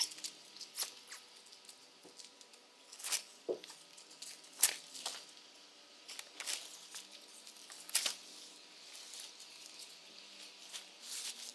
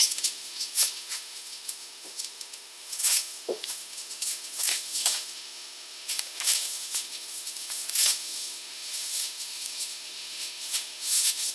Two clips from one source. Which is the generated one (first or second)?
second